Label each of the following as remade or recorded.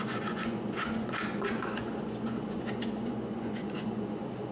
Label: remade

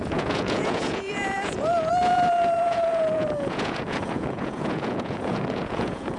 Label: remade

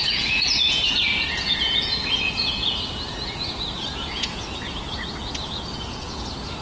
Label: remade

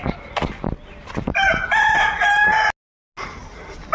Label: recorded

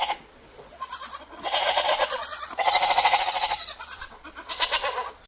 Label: remade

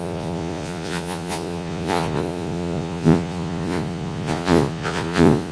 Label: remade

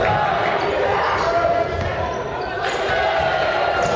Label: recorded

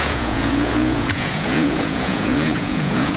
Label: remade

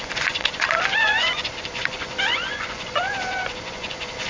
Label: remade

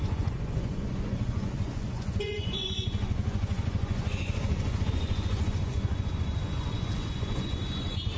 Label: remade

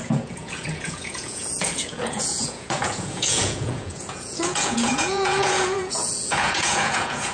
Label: remade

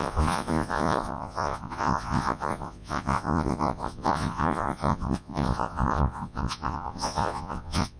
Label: remade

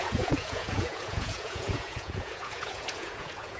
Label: remade